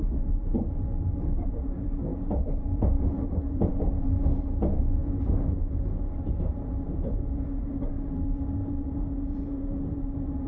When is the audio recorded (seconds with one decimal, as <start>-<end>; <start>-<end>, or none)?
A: 0.5-1.0